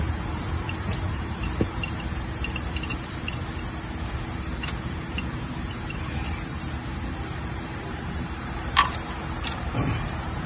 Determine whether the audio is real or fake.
fake